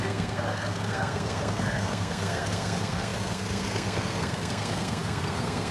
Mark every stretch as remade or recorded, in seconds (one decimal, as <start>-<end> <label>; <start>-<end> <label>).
0.0-5.7 remade